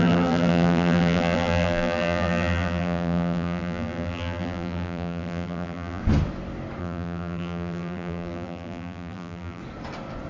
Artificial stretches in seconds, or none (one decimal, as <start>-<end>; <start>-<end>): 0.0-6.0; 6.8-9.6